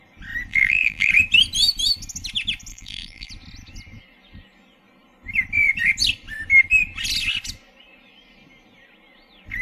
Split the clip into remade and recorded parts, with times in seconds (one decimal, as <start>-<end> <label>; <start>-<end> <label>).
0.0-0.5 recorded; 0.5-1.1 remade; 1.1-2.7 recorded; 2.7-3.3 remade; 3.3-9.6 recorded